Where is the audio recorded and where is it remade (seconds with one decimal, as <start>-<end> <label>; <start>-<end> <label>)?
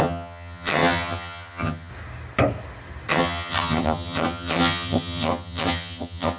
0.0-1.9 remade; 1.9-3.1 recorded; 3.1-6.4 remade